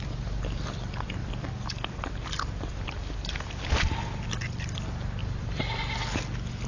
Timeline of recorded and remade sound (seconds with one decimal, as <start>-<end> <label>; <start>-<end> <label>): 0.0-5.2 recorded; 5.2-5.7 remade; 5.7-6.7 recorded